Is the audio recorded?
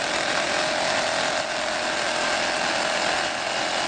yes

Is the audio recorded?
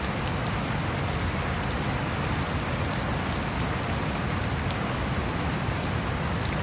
yes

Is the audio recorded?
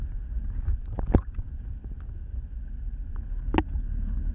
yes